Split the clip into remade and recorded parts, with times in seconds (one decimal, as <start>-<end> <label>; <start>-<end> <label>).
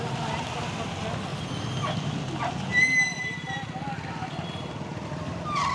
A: 0.0-1.3 recorded; 1.3-2.2 remade; 2.2-5.7 recorded